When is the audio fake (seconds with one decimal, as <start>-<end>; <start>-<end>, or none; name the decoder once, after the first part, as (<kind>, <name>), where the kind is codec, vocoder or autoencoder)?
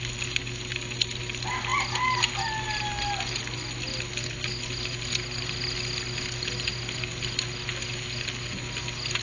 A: none